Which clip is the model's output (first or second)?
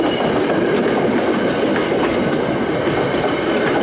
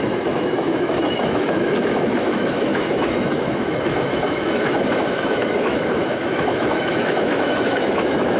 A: second